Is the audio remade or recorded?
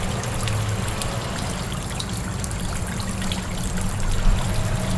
recorded